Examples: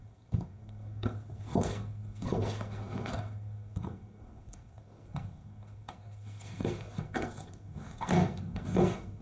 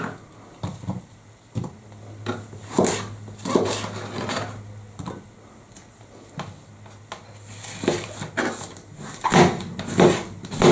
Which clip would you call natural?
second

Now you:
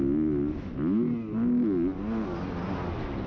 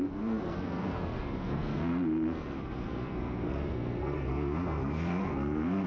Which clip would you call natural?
first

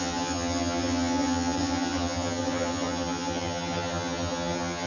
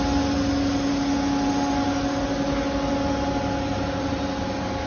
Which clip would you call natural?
second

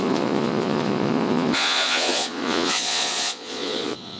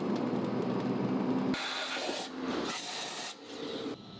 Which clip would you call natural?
second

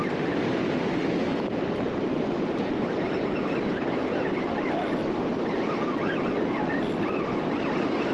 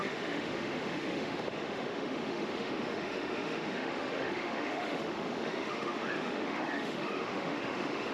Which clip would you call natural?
first